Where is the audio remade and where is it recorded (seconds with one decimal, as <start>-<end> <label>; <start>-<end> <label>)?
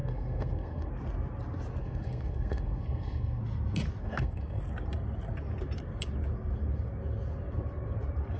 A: 0.0-0.9 remade; 0.9-1.8 recorded; 1.8-3.4 remade; 3.4-4.0 recorded; 4.0-4.6 remade; 4.6-8.4 recorded